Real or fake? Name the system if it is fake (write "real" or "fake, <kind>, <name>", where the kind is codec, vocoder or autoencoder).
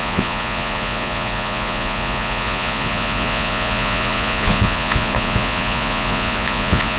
fake, vocoder, Vocos